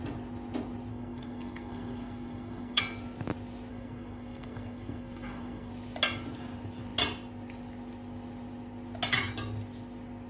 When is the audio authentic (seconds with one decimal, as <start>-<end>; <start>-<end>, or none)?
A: 0.0-0.9; 2.8-3.7; 5.7-10.3